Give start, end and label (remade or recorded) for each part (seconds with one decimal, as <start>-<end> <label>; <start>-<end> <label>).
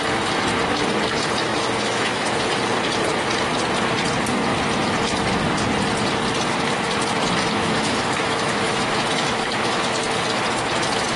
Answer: 0.0-1.5 recorded; 1.5-2.6 remade; 2.6-7.4 recorded; 7.4-9.9 remade; 9.9-11.2 recorded